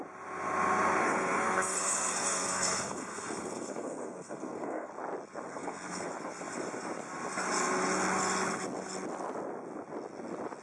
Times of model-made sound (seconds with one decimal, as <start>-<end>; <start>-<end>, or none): 1.0-4.9; 5.5-6.1